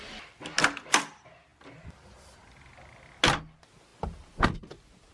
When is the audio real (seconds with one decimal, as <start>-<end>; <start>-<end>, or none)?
0.0-5.1